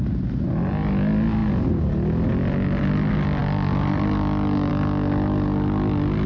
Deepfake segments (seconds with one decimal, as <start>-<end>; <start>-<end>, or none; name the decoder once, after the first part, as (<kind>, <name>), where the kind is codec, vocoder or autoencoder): none